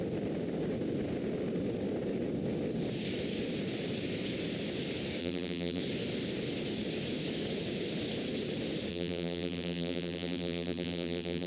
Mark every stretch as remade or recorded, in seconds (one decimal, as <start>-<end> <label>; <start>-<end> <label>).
0.0-5.2 recorded; 5.2-5.8 remade; 5.8-8.9 recorded; 8.9-11.5 remade